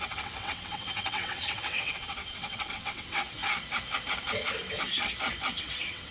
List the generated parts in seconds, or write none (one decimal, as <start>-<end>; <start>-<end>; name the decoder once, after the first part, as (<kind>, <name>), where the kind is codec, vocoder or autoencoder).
0.0-3.4 (vocoder, WaveNeXt); 5.6-6.1